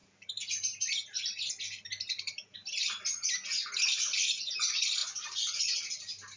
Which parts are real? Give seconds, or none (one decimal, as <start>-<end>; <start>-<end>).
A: 1.5-5.0; 5.6-6.4